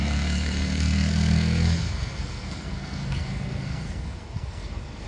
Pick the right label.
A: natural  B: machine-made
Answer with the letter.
B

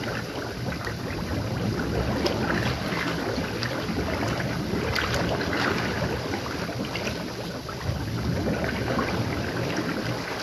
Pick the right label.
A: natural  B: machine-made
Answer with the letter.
A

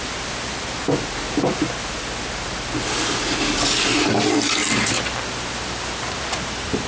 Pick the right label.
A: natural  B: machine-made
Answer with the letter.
A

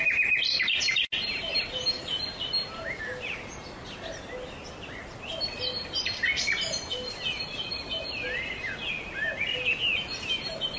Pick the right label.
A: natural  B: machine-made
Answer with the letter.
A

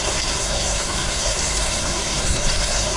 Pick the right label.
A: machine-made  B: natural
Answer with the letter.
A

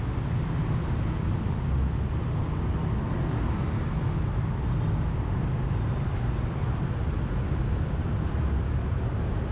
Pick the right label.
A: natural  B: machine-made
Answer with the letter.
A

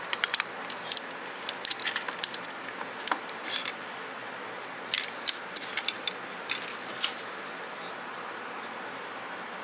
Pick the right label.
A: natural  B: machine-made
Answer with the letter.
A